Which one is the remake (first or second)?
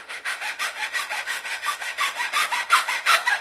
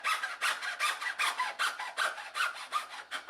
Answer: first